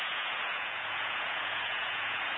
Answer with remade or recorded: remade